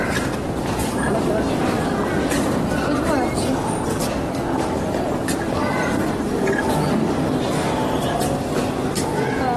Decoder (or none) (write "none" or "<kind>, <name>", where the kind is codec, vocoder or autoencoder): none